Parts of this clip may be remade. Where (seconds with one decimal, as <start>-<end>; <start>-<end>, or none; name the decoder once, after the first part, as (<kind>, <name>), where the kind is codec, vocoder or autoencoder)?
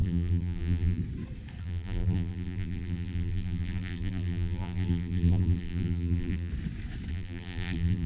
0.0-1.0 (vocoder, BigVGAN v2); 1.6-6.5; 7.1-8.1